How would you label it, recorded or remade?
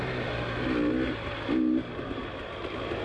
recorded